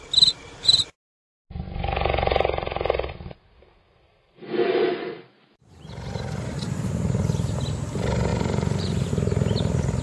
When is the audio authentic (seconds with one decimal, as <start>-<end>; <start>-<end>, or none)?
0.0-8.3; 9.1-10.0